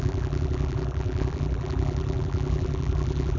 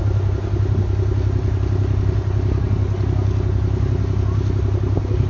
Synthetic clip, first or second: first